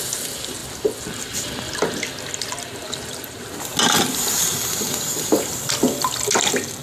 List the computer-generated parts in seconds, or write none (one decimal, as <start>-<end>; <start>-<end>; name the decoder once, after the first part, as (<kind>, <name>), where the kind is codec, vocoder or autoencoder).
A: none